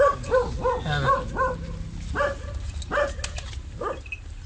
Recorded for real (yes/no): yes